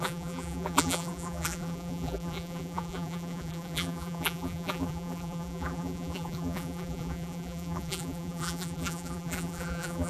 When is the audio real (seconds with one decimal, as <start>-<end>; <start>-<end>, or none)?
none